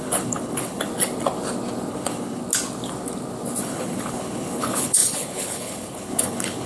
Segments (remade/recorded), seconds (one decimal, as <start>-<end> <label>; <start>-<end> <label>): 0.0-0.9 remade; 0.9-1.9 recorded; 1.9-2.4 remade; 2.4-3.6 recorded; 3.6-6.7 remade